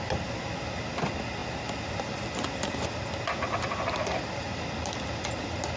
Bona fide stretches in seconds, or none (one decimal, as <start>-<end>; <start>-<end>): 0.0-5.8